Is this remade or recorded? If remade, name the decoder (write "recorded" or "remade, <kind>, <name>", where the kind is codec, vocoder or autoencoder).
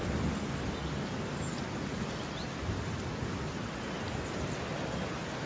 recorded